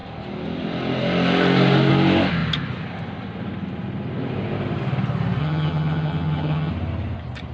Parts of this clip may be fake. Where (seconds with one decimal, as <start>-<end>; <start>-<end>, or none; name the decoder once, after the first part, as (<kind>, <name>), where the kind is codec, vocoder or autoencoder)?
5.4-6.7 (vocoder, HiFi-GAN)